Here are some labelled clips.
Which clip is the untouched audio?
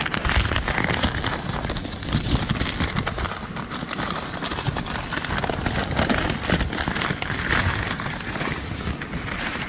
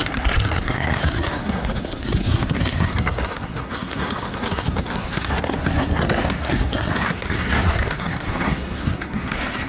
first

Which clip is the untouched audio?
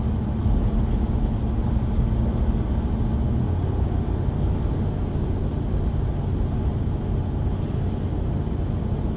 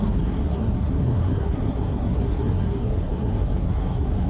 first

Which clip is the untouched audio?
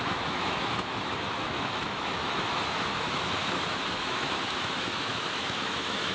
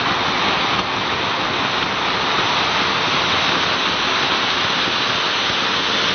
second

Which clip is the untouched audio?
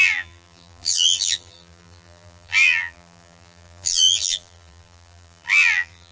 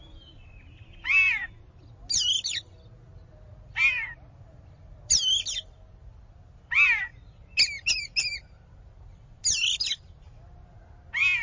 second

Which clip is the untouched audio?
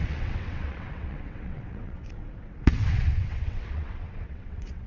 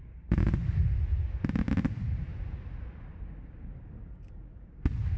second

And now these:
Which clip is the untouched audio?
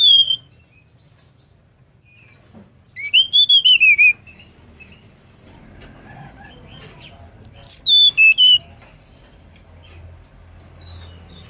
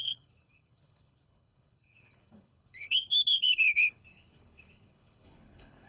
first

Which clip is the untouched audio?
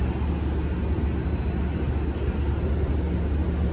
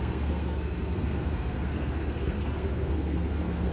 first